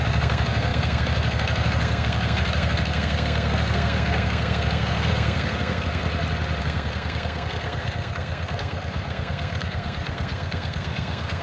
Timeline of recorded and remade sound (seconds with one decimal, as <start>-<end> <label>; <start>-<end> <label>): 0.0-6.0 remade; 6.0-6.6 recorded; 6.6-11.4 remade